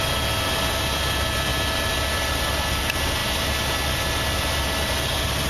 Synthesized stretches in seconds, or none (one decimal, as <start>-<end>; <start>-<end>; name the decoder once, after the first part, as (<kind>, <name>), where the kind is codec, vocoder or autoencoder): none